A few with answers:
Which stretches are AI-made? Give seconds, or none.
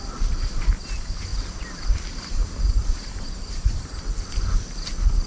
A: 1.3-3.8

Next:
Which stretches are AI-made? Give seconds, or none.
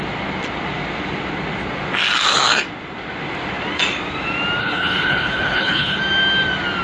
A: 4.6-6.0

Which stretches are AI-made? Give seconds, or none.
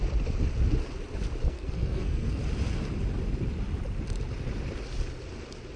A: 1.4-2.4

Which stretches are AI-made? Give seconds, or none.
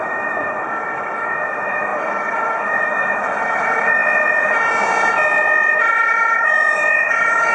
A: 0.0-4.0; 5.7-7.5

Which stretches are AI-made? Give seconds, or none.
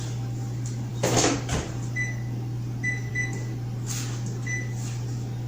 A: none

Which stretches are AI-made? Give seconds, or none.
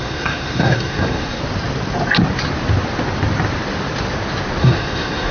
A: 0.0-1.4; 4.6-5.3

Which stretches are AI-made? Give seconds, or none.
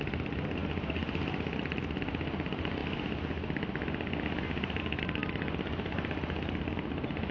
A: none